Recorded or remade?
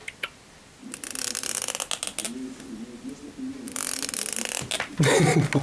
recorded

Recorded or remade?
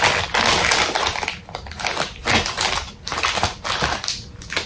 recorded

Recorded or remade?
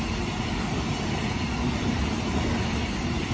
recorded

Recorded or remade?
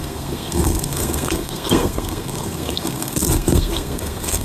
remade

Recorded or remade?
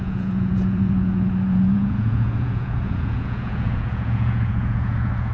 remade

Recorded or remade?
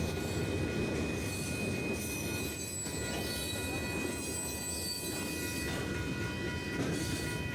recorded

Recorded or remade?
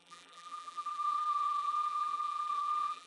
remade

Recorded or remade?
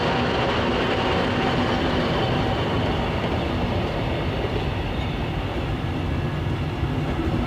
recorded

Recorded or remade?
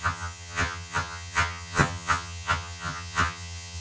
remade